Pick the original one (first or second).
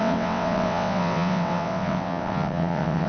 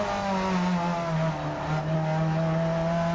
second